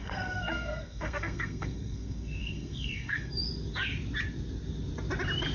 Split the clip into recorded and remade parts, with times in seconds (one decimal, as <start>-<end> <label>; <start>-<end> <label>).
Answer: 0.0-3.3 remade; 3.3-5.5 recorded